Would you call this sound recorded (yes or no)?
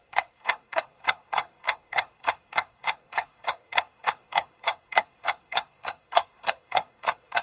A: no